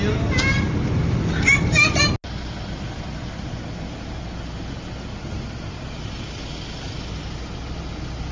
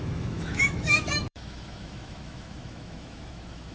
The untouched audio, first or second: first